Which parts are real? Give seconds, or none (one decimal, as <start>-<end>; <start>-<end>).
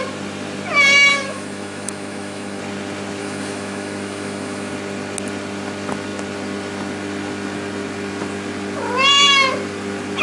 0.0-1.1; 2.6-3.2; 4.7-10.2